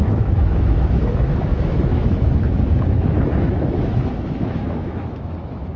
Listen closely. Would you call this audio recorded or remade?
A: remade